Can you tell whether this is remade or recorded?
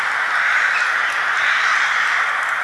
recorded